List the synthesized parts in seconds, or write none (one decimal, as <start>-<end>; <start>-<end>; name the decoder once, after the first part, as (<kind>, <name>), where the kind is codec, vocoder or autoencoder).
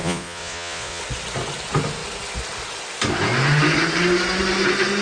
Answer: 0.0-1.0 (vocoder, Vocos)